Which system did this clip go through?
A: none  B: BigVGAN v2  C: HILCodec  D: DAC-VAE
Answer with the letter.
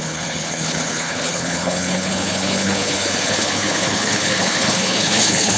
C